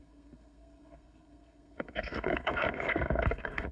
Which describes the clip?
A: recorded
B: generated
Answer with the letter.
B